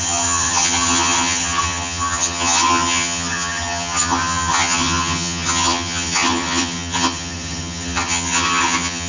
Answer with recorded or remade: remade